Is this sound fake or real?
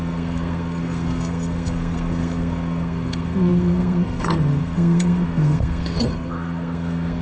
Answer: fake